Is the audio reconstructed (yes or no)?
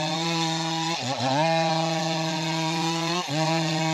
yes